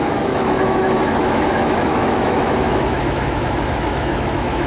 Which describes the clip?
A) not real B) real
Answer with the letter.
A